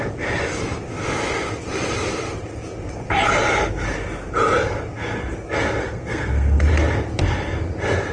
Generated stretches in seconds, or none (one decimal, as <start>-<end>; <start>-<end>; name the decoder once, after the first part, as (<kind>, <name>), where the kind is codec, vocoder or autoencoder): 5.8-6.7 (codec, SNAC)